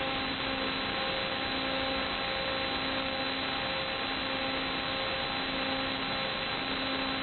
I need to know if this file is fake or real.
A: real